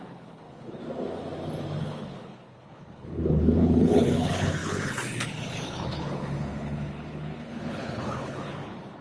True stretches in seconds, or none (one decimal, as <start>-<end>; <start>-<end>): 0.8-1.8